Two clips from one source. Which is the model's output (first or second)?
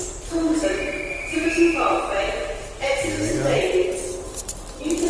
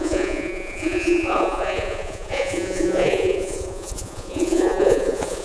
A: second